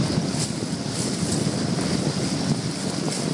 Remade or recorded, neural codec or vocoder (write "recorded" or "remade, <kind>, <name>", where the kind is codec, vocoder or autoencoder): recorded